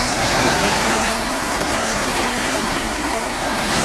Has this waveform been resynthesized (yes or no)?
yes